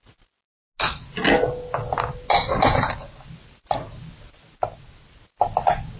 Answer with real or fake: real